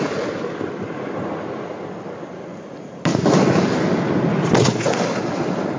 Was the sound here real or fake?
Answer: real